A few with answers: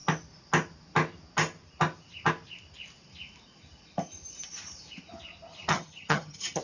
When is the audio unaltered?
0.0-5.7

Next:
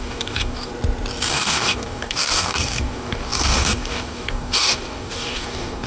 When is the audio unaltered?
0.7-1.3

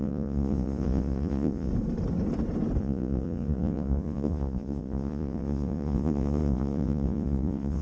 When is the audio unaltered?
1.7-2.8

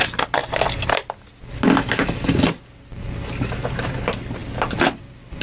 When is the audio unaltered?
0.0-5.4

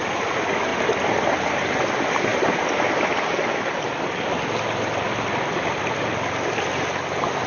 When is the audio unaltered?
0.0-7.5